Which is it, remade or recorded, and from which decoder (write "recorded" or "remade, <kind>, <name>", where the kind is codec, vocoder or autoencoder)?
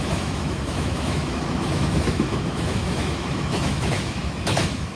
remade, autoencoder, DAC-VAE